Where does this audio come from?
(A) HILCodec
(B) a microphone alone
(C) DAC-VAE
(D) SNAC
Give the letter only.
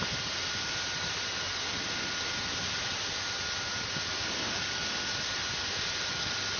B